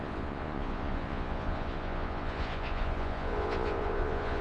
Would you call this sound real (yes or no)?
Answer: no